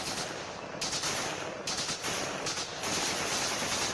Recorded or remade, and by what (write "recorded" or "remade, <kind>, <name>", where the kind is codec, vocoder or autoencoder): recorded